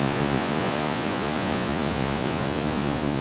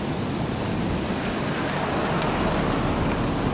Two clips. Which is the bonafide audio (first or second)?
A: second